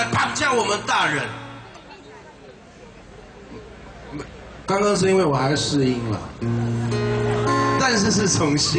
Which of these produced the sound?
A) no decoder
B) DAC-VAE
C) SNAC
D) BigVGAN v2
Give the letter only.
A